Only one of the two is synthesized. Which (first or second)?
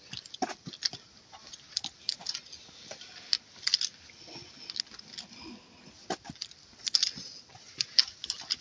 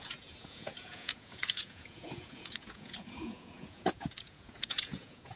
second